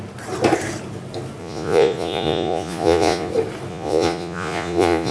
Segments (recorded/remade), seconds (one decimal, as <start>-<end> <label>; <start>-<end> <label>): 0.0-1.4 recorded; 1.4-3.3 remade; 3.3-3.7 recorded; 3.7-5.1 remade